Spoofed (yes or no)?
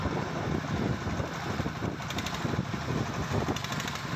no